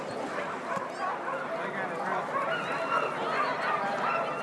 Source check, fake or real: real